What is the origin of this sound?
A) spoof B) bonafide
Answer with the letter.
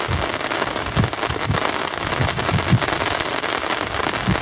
B